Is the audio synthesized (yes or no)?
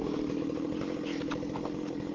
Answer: no